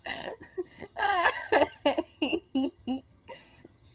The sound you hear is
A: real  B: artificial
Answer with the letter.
B